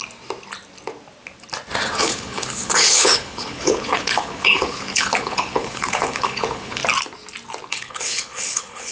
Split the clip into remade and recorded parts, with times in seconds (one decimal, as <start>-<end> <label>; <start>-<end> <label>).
0.0-2.0 recorded; 2.0-6.8 remade; 6.8-7.7 recorded; 7.7-8.9 remade